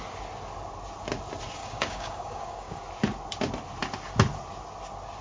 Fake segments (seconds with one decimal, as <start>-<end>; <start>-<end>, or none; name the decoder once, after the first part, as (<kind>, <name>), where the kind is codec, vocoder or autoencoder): 1.6-2.8 (codec, DAC)